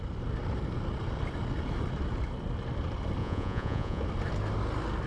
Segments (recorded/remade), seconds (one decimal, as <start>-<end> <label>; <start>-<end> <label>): 0.0-3.2 recorded; 3.2-4.0 remade; 4.0-5.1 recorded

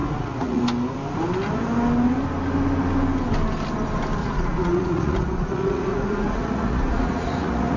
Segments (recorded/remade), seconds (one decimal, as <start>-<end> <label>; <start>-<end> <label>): 0.0-0.6 remade; 0.6-4.2 recorded; 4.2-7.8 remade

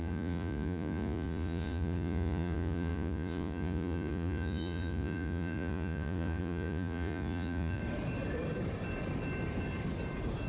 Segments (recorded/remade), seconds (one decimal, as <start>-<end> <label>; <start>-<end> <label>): 0.0-7.8 remade; 7.8-10.5 recorded

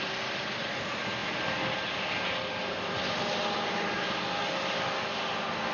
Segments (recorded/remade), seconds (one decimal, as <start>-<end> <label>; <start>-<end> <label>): 0.0-5.7 recorded

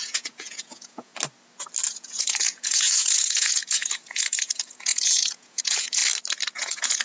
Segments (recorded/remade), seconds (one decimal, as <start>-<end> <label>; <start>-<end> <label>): 0.0-1.1 remade; 1.1-1.9 recorded; 1.9-6.0 remade; 6.0-6.5 recorded; 6.5-7.0 remade

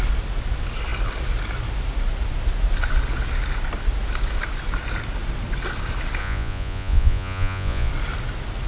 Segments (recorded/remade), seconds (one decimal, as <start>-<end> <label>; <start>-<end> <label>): 0.0-6.2 recorded; 6.2-7.9 remade; 7.9-8.7 recorded

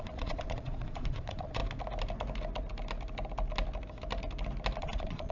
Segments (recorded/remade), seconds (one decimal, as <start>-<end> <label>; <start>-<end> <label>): 0.0-1.6 remade; 1.6-4.8 recorded; 4.8-5.3 remade